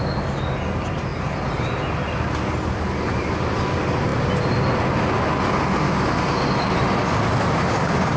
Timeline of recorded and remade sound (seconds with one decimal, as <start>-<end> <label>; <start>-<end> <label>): 0.0-8.2 recorded